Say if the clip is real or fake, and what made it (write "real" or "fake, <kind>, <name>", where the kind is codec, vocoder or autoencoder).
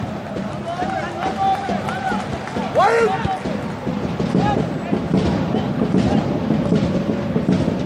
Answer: real